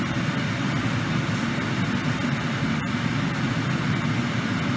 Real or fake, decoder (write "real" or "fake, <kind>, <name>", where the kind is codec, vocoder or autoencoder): real